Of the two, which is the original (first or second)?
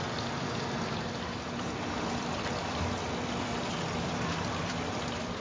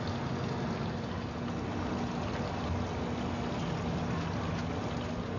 second